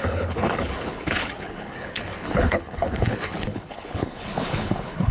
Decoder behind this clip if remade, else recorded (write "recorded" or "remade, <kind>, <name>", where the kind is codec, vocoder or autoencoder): remade, codec, HILCodec